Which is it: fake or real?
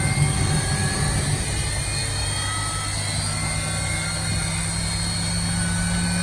real